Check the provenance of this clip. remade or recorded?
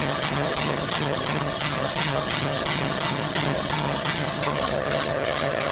remade